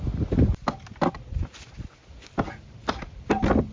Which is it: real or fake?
real